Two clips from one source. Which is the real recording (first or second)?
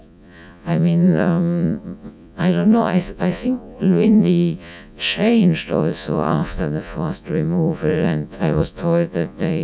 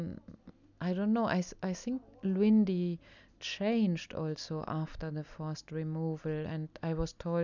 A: second